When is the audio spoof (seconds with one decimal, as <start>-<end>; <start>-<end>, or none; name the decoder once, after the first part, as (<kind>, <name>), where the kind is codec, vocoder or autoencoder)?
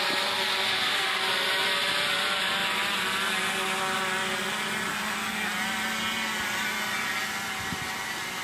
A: 0.7-1.2 (codec, SNAC); 4.9-5.5